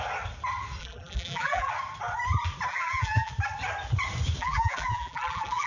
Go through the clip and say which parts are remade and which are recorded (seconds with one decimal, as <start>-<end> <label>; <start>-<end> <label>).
0.0-0.8 recorded; 0.8-1.7 remade; 1.7-2.7 recorded; 2.7-3.3 remade; 3.3-4.4 recorded; 4.4-5.7 remade